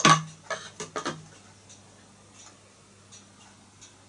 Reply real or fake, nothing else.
real